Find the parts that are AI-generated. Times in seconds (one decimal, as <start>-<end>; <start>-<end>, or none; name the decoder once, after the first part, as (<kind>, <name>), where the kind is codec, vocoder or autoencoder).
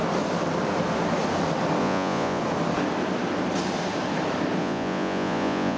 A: 1.8-2.4 (vocoder, Vocos); 4.6-5.8